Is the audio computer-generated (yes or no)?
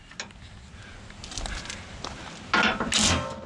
no